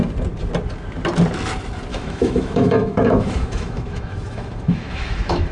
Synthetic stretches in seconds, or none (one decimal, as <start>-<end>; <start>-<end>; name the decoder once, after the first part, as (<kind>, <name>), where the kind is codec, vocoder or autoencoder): 1.9-5.5 (autoencoder, DAC-VAE)